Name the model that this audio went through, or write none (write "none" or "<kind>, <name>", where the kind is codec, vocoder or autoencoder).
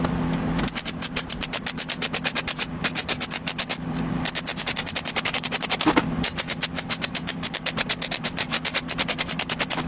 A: none